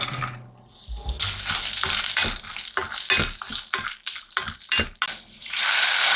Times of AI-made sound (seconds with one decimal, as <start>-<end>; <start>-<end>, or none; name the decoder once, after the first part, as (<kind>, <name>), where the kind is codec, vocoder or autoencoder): none